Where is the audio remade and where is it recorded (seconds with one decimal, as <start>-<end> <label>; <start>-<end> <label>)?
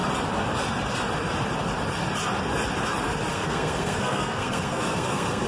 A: 0.0-3.3 recorded; 3.3-5.5 remade